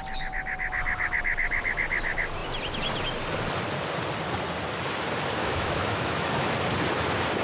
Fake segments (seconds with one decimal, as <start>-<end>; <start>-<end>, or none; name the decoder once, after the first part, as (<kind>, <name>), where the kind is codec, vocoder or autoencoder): 5.4-6.5 (autoencoder, DAC-VAE)